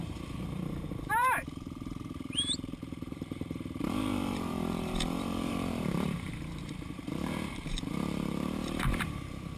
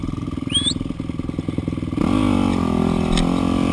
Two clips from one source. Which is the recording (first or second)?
second